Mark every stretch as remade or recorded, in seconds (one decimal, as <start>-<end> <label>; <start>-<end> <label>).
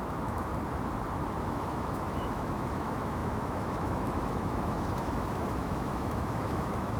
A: 0.0-0.5 remade; 0.5-1.4 recorded; 1.4-7.0 remade